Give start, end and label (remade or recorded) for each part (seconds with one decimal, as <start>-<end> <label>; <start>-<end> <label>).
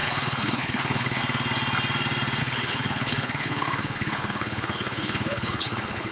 0.0-1.2 remade; 1.2-2.4 recorded; 2.4-6.1 remade